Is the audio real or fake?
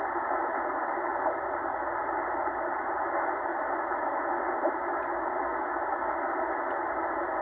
real